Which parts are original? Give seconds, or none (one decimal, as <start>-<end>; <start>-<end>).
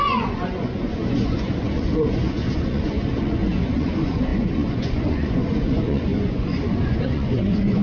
none